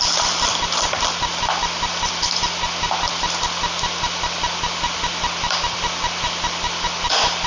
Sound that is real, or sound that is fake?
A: real